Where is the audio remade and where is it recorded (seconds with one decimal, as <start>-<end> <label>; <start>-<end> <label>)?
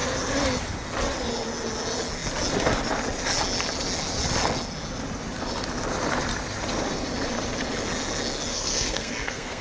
0.0-8.5 recorded; 8.5-9.6 remade